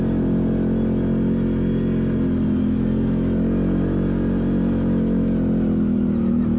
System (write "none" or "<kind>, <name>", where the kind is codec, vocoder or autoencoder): none